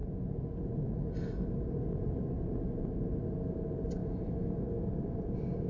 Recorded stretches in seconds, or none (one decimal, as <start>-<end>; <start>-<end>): 0.0-4.0; 4.8-5.7

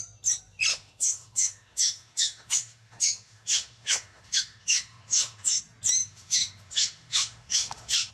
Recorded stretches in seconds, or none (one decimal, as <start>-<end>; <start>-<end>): 0.0-0.7; 5.6-6.0

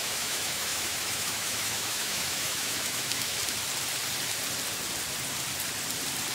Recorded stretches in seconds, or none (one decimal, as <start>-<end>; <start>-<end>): 3.4-6.3